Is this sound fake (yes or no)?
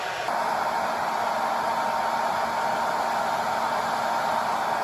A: no